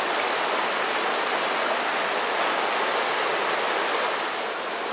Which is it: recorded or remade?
recorded